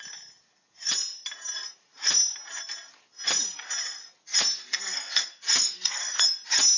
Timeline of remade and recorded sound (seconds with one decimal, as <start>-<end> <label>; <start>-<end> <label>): 0.0-4.6 recorded; 4.6-6.2 remade; 6.2-6.8 recorded